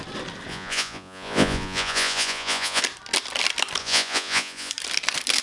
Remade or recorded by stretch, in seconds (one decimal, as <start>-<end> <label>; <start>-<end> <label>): 0.0-0.5 recorded; 0.5-2.8 remade; 2.8-3.8 recorded; 3.8-4.7 remade; 4.7-5.4 recorded